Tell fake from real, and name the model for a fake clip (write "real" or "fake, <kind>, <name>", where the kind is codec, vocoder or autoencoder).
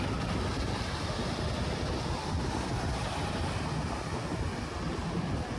real